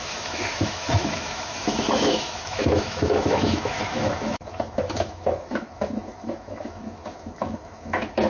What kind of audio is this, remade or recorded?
remade